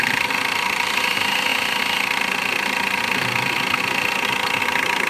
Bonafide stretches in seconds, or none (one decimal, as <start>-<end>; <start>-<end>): 0.0-5.1